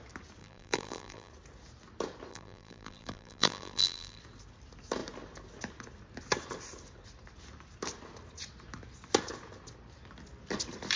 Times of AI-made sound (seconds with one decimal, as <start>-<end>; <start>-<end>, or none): 0.4-1.3; 2.3-4.2